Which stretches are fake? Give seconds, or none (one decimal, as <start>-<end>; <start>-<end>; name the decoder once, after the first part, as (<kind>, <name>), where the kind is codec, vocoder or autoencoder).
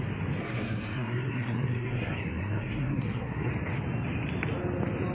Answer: 0.4-3.5 (codec, SNAC)